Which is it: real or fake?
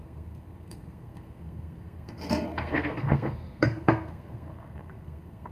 fake